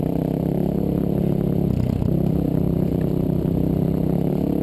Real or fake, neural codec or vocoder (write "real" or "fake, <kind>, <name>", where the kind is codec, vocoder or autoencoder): fake, vocoder, BigVGAN v2